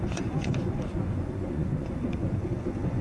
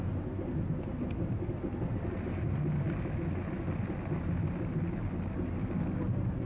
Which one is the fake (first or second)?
first